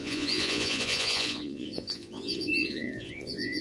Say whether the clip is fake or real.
fake